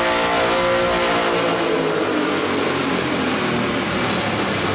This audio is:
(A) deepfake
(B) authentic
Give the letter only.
B